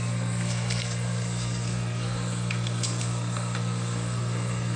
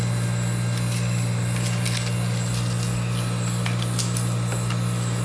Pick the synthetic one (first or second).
first